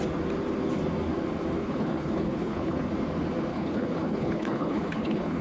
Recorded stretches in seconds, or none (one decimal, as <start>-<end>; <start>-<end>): 0.0-1.6; 2.9-3.5